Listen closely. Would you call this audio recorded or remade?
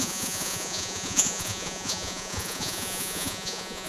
remade